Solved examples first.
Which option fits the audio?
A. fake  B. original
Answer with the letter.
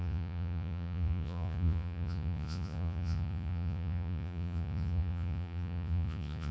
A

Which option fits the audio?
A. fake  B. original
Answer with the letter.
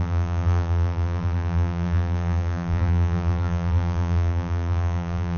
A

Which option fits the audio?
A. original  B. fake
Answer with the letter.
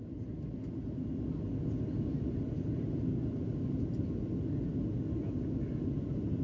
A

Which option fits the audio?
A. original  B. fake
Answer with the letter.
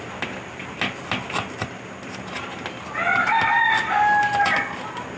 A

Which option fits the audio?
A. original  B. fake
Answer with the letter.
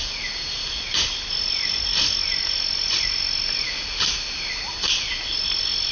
A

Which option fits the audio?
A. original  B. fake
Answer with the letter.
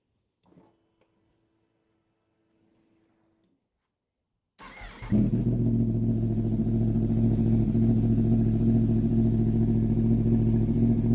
A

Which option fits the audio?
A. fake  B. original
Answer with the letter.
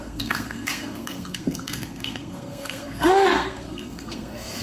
A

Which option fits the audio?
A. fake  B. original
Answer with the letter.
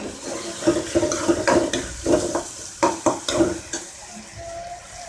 B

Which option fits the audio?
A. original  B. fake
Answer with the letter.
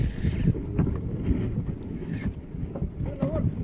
A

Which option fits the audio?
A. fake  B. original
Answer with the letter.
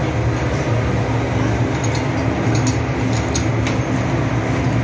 B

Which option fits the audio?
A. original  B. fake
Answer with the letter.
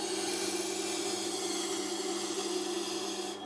A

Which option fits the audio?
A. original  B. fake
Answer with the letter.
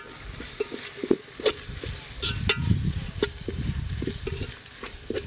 A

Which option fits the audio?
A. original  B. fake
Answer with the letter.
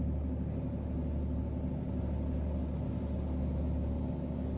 A